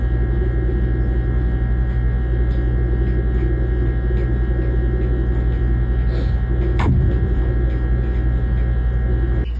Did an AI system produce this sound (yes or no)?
no